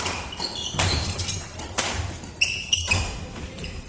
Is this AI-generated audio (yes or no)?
yes